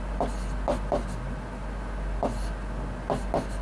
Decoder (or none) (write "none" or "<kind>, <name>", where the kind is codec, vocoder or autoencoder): none